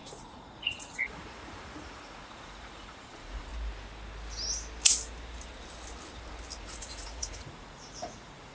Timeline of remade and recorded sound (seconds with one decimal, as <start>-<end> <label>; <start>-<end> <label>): 0.0-3.5 remade; 3.5-6.6 recorded; 6.6-8.5 remade